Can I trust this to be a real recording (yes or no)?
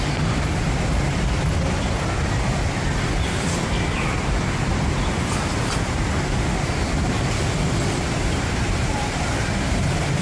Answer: no